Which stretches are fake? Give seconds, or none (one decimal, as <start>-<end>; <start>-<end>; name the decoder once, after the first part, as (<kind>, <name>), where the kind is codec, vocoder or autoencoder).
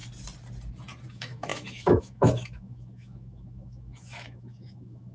1.1-5.1 (autoencoder, DAC-VAE)